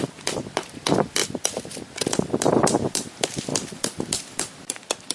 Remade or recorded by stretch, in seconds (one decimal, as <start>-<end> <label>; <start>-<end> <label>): 0.0-5.1 recorded